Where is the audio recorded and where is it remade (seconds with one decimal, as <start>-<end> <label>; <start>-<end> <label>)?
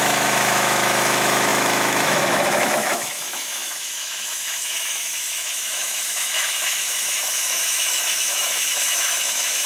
0.0-9.7 remade